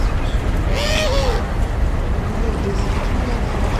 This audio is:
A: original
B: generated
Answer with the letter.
A